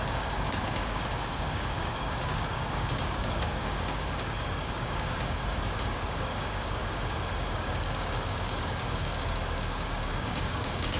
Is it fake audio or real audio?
fake